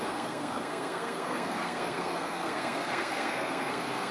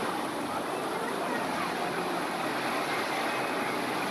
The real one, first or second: second